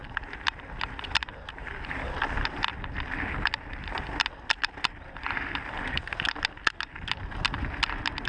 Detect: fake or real real